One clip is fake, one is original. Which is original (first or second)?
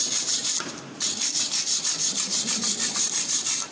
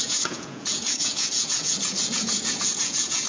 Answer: first